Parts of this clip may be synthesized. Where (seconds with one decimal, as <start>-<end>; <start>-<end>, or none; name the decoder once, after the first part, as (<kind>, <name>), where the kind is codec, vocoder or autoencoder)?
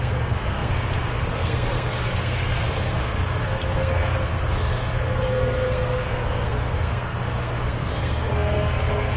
0.0-9.2 (codec, SNAC)